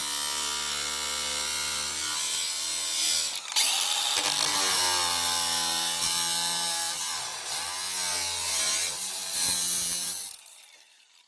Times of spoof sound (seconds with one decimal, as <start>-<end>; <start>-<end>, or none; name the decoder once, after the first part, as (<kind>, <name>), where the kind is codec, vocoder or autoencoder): none